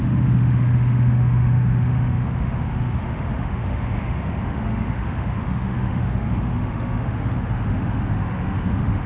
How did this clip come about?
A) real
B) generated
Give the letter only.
B